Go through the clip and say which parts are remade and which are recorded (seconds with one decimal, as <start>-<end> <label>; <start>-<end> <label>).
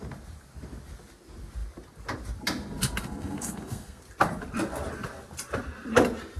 0.0-3.0 recorded; 3.0-4.0 remade; 4.0-6.4 recorded